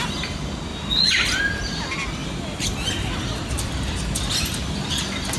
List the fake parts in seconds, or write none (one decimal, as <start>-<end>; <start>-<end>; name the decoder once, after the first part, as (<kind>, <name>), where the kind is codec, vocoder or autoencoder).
0.7-1.4 (vocoder, BigVGAN v2); 2.2-4.6